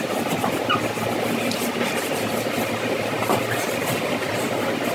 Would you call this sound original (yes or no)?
yes